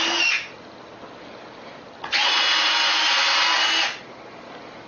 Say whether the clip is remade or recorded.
recorded